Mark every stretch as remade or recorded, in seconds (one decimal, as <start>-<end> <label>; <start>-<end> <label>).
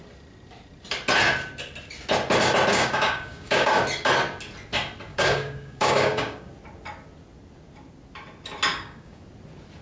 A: 0.0-2.7 recorded; 2.7-3.8 remade; 3.8-5.1 recorded; 5.1-6.5 remade; 6.5-8.7 recorded; 8.7-9.2 remade; 9.2-9.8 recorded